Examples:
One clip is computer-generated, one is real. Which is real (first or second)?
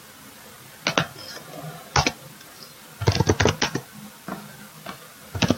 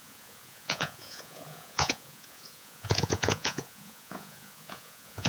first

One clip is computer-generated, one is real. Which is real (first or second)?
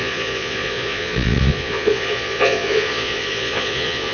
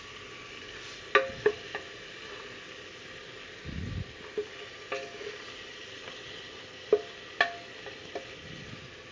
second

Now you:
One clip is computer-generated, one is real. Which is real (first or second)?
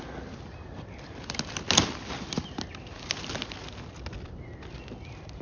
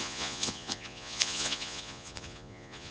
first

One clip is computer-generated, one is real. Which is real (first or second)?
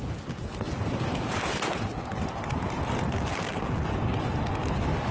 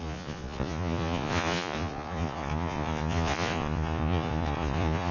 first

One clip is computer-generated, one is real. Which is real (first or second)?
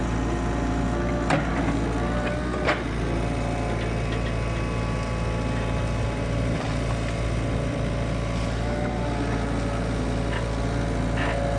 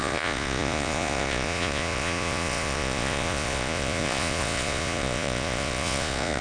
first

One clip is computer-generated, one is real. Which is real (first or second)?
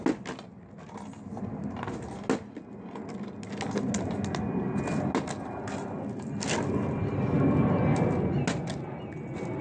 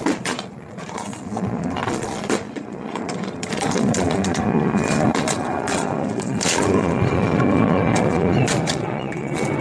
first